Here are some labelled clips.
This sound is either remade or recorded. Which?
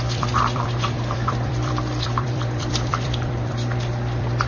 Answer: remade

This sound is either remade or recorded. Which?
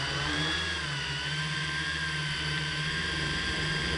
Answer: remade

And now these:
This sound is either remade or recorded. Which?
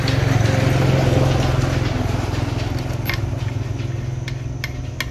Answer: recorded